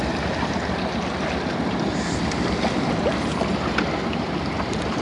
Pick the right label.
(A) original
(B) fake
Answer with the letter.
A